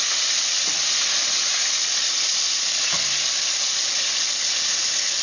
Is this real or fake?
real